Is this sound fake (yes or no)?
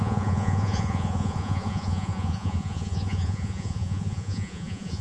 yes